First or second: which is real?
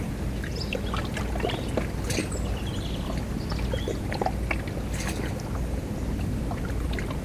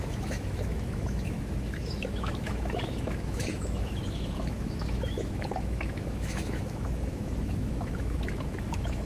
first